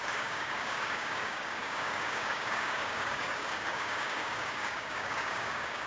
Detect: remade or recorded remade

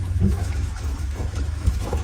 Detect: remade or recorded remade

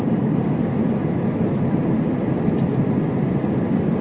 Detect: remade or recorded recorded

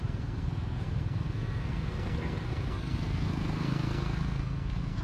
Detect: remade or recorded remade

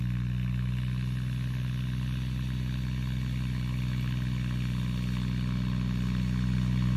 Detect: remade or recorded recorded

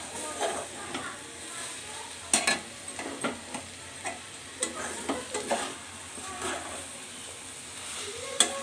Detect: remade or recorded recorded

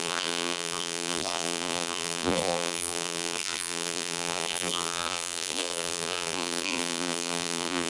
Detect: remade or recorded remade